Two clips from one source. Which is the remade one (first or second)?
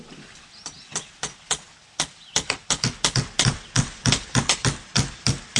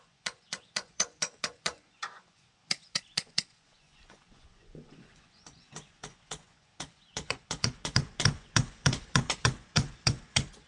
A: second